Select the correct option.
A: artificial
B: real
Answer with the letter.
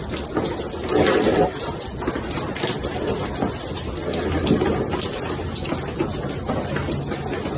B